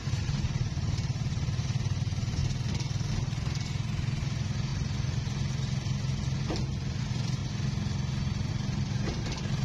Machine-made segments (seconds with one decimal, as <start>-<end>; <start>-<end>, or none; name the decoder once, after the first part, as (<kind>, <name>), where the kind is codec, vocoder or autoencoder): 0.0-2.4 (vocoder, BigVGAN v2); 3.1-4.7; 7.0-7.4; 8.5-9.6